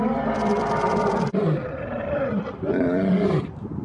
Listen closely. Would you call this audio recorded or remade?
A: remade